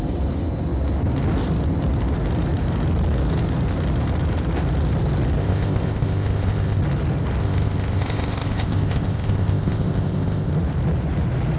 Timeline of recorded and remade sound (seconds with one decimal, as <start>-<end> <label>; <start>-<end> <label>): 0.0-5.4 recorded; 5.4-6.8 remade; 6.8-7.4 recorded; 7.4-10.5 remade; 10.5-11.6 recorded